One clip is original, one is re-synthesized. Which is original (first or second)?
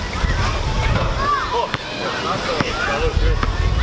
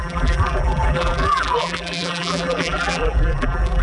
first